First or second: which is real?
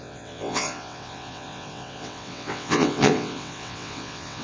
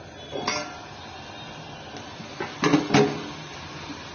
second